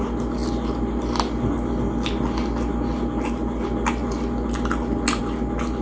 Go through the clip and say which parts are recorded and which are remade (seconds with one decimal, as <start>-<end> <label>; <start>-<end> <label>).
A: 0.0-5.8 recorded